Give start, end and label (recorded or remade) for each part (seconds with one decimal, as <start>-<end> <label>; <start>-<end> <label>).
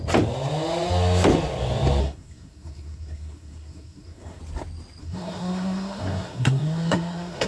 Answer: 0.0-2.0 recorded; 2.0-4.4 remade; 4.4-5.0 recorded; 5.0-7.5 remade